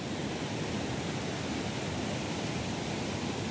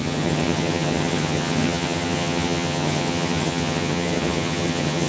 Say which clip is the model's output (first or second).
second